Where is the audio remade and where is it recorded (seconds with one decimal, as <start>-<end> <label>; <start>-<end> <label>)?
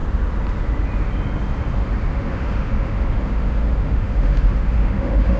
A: 0.0-2.1 recorded; 2.1-5.4 remade